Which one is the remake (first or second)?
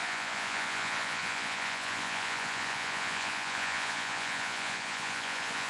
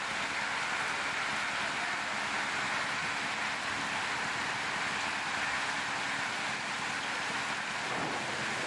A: first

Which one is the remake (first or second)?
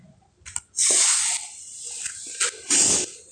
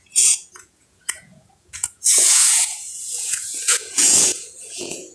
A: second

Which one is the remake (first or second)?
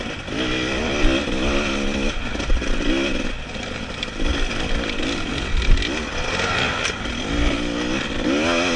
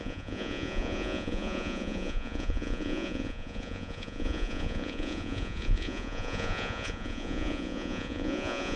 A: second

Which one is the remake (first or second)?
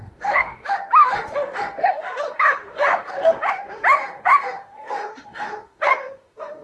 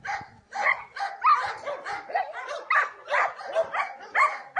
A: first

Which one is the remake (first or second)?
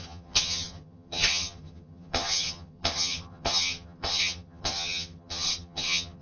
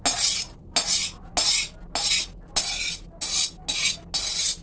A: first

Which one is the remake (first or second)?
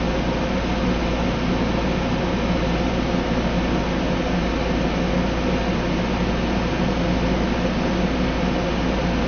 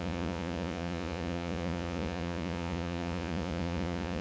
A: second